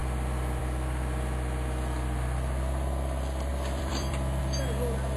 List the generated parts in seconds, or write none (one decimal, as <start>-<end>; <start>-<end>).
3.5-4.4

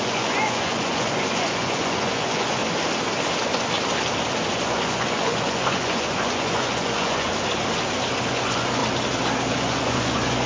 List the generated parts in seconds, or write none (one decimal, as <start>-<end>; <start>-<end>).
0.0-2.6; 4.5-7.3; 8.3-8.8; 9.5-10.5

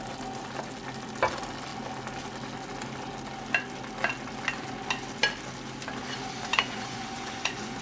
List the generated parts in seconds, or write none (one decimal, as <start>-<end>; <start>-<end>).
6.5-7.8

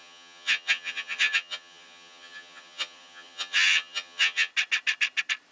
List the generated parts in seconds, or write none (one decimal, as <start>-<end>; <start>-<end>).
0.0-4.5

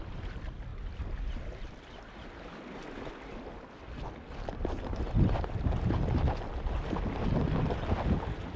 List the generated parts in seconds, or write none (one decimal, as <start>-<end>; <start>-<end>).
none

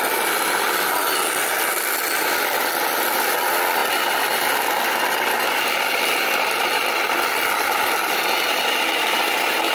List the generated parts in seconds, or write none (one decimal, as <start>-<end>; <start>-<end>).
none

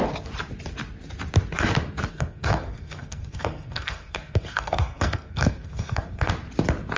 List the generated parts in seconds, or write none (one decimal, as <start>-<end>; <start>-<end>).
2.1-6.3

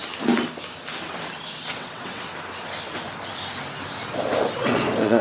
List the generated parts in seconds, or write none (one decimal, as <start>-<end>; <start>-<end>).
1.7-2.3; 4.4-5.2